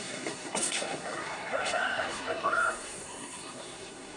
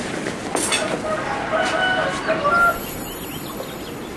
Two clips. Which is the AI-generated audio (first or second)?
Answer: first